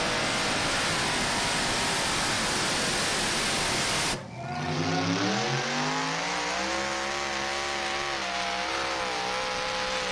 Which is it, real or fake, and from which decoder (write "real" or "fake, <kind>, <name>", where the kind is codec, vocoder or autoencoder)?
real